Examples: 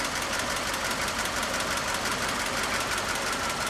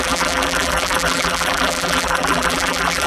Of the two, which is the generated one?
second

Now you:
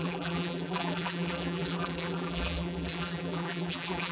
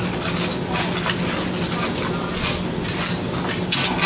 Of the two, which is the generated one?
first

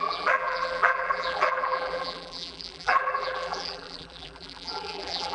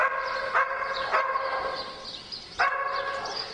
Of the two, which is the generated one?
first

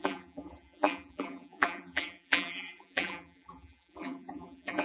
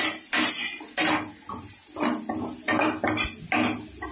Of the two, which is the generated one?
first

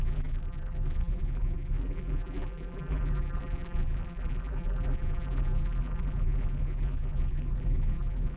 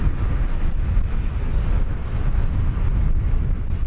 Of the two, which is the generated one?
first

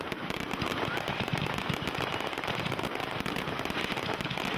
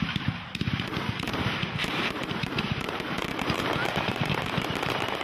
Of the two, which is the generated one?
second